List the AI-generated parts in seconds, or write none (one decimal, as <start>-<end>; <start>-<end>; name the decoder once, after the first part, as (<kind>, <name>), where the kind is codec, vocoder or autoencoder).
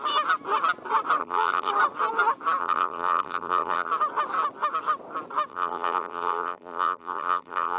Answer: 1.2-1.7 (vocoder, BigVGAN v2); 2.6-3.9; 5.5-7.8